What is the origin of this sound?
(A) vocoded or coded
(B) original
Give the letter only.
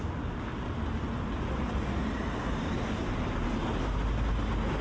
B